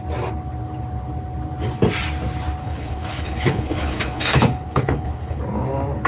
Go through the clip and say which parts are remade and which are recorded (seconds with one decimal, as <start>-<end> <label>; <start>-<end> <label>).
0.0-2.6 recorded; 2.6-5.4 remade; 5.4-6.1 recorded